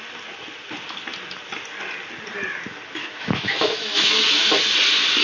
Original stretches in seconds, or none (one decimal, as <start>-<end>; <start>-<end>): 0.0-3.0; 4.6-5.2